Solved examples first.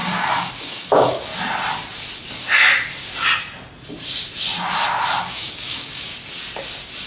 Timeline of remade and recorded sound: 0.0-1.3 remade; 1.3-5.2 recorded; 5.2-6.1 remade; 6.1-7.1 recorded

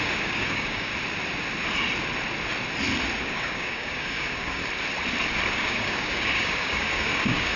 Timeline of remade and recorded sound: 0.0-0.9 remade; 0.9-3.2 recorded; 3.2-4.6 remade; 4.6-5.5 recorded; 5.5-7.6 remade

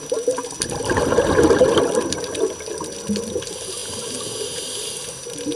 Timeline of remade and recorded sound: 0.0-5.6 recorded

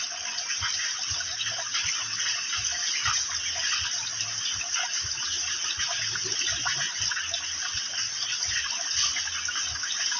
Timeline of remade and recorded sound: 0.0-10.2 recorded